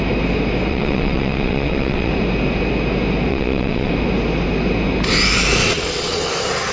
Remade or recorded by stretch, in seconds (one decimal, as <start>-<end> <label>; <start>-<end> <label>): 0.0-0.7 recorded; 0.7-2.1 remade; 2.1-3.3 recorded; 3.3-3.9 remade; 3.9-5.6 recorded; 5.6-6.3 remade; 6.3-6.7 recorded